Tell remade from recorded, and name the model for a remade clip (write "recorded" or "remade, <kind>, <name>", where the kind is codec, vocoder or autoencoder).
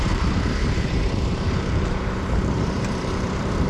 remade, vocoder, BigVGAN v2